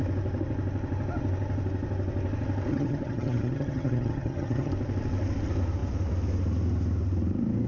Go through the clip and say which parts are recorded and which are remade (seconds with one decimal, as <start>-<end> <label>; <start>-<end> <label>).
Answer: 0.0-2.7 recorded; 2.7-4.7 remade; 4.7-7.7 recorded